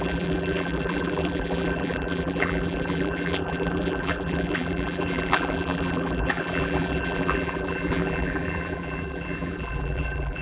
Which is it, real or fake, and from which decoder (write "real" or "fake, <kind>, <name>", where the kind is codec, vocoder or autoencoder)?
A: fake, vocoder, BigVGAN v2